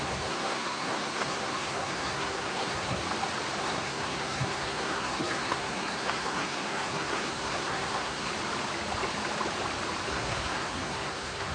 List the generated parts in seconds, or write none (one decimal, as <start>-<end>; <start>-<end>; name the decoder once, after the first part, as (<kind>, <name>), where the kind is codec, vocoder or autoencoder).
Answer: 0.0-3.0 (codec, SNAC); 3.6-8.3; 10.1-11.5